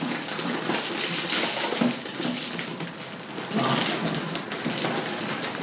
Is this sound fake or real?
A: real